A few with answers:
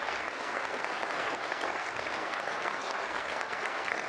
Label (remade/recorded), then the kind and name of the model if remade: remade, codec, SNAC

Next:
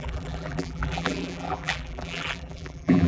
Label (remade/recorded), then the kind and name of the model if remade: remade, vocoder, BigVGAN v2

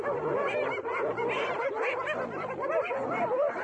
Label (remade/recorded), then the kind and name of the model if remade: recorded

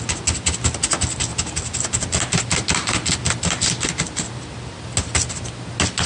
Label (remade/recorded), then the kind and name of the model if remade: recorded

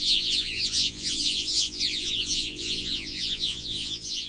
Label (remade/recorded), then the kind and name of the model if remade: remade, vocoder, Vocos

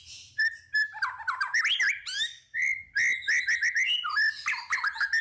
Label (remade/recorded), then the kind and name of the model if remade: recorded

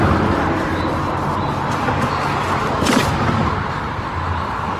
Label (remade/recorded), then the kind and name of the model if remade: recorded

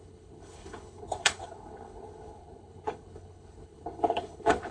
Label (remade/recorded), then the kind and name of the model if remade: remade, codec, HILCodec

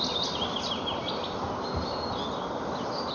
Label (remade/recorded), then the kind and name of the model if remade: recorded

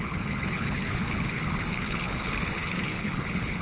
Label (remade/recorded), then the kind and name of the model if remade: remade, codec, HILCodec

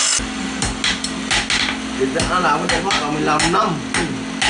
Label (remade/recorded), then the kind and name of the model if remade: recorded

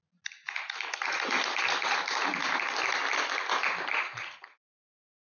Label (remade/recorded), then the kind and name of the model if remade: recorded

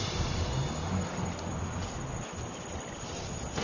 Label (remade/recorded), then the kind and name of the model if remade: recorded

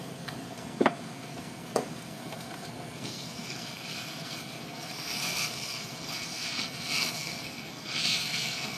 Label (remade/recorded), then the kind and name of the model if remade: remade, codec, SNAC